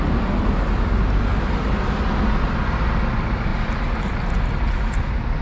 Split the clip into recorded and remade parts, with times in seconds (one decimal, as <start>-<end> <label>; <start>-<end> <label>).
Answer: 0.0-5.4 recorded